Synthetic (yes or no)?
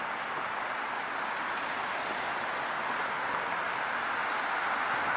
no